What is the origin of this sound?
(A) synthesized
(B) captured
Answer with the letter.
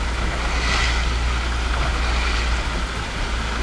B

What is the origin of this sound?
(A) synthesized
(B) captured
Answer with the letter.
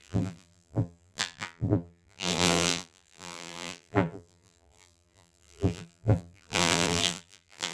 A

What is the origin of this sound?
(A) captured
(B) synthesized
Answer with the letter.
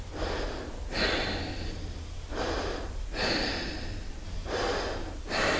A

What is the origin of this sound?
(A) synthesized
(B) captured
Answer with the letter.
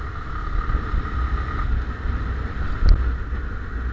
B